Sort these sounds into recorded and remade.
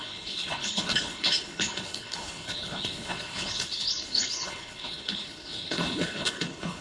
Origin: remade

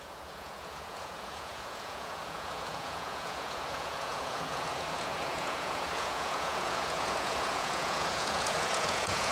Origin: remade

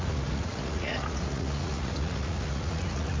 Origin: remade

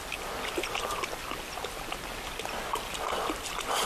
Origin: recorded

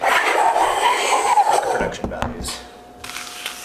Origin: recorded